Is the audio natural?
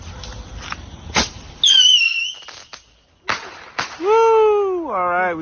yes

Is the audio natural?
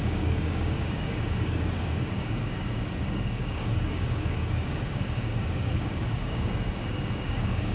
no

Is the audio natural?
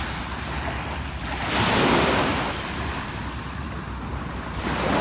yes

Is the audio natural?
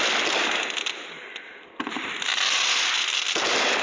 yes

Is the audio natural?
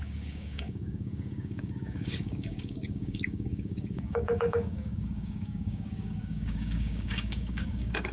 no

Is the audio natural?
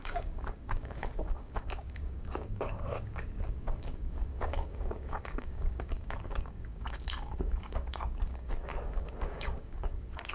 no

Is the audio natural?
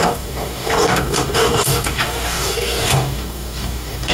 no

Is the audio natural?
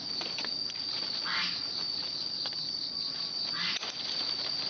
yes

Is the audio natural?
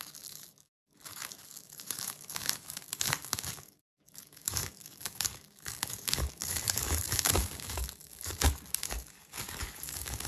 no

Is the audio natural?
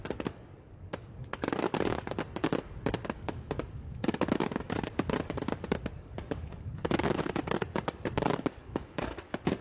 no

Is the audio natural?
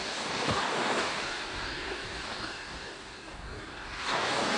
no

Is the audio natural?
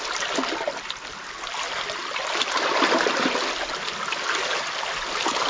yes